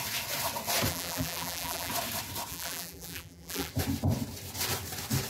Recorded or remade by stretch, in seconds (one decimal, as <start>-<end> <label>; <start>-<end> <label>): 0.0-0.9 recorded; 0.9-1.9 remade; 1.9-2.5 recorded; 2.5-3.7 remade; 3.7-5.3 recorded